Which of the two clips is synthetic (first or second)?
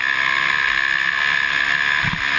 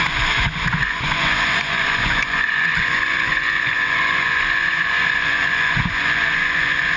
second